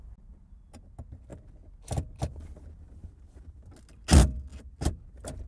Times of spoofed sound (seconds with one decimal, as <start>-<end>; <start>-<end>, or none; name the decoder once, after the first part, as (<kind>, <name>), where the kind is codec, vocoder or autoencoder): none